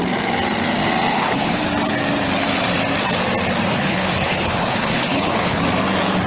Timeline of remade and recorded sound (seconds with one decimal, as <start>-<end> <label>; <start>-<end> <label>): 0.0-1.1 recorded; 1.1-1.6 remade; 1.6-3.7 recorded; 3.7-5.6 remade; 5.6-6.3 recorded